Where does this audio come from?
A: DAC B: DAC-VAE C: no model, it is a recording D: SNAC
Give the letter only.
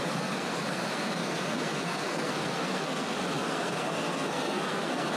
D